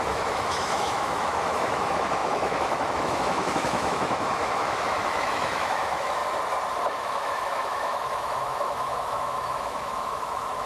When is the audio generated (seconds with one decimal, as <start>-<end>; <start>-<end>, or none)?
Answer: 0.0-6.2; 6.9-10.7